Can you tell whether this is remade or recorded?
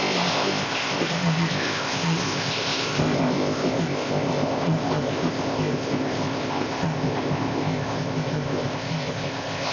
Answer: remade